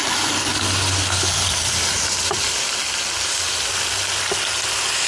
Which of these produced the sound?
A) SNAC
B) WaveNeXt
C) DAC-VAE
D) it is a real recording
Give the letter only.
D